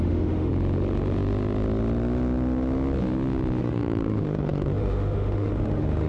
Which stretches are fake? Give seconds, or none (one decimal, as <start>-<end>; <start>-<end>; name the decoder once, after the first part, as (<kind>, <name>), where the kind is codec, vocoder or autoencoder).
0.0-0.5 (autoencoder, DAC-VAE); 3.6-6.1